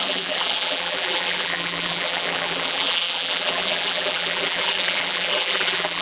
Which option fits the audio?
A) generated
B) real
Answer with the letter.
A